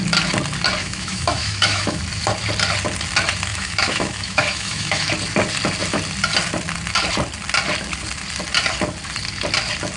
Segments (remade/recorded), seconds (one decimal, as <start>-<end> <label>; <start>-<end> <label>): 0.0-0.8 recorded; 0.8-2.0 remade; 2.0-3.5 recorded; 3.5-5.1 remade; 5.1-10.0 recorded